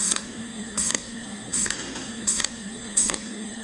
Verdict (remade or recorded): remade